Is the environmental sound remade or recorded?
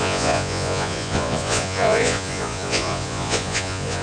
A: remade